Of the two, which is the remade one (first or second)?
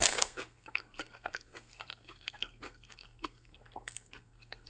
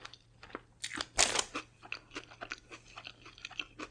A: first